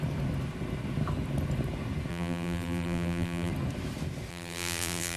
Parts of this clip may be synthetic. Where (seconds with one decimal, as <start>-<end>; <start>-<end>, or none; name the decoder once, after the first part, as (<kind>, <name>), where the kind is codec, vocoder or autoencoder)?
2.1-3.5 (vocoder, BigVGAN v2); 4.3-5.2